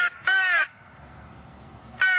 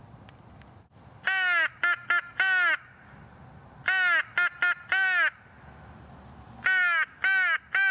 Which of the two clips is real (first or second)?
second